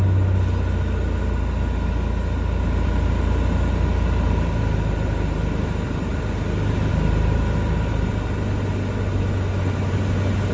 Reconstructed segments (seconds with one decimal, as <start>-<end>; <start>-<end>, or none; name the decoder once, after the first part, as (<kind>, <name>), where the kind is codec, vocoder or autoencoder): none